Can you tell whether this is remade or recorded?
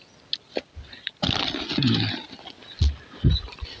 recorded